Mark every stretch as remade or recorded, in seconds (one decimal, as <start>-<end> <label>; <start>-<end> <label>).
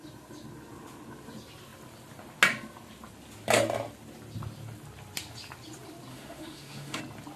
0.0-6.1 recorded; 6.1-7.0 remade; 7.0-7.4 recorded